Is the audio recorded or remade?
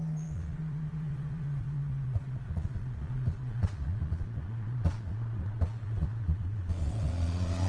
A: remade